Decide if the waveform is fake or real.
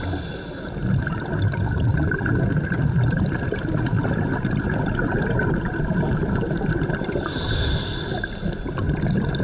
real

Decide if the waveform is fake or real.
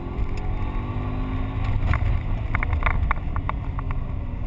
real